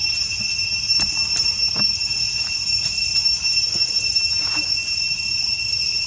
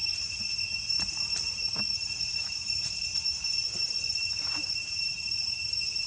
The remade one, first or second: second